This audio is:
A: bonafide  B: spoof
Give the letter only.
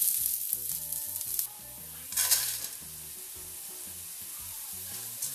A